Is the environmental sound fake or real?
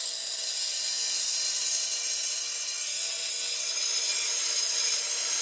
real